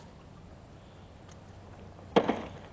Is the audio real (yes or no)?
yes